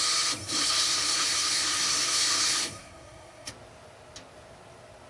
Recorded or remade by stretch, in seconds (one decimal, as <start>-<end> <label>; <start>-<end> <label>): 0.0-0.4 recorded; 0.4-3.5 remade; 3.5-5.1 recorded